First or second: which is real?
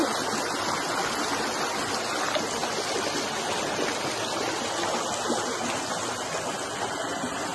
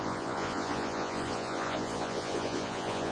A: first